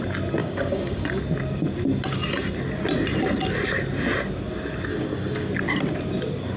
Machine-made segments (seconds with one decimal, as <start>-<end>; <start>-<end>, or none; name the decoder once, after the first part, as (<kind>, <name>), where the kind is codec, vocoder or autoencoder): 0.4-1.2 (codec, DAC); 4.9-5.5